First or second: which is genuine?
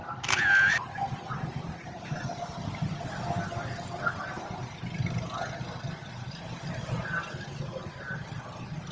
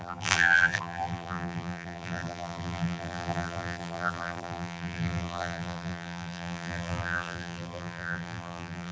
first